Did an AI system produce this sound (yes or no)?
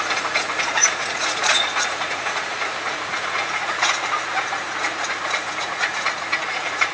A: yes